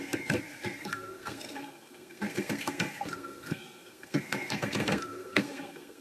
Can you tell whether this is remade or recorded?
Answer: remade